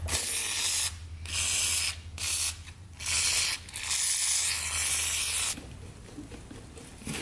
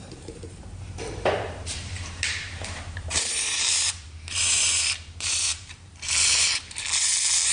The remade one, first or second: second